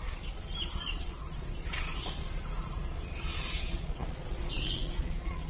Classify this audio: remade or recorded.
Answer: remade